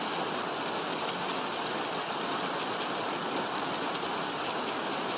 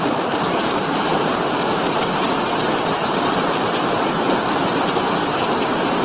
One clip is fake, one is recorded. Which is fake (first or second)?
second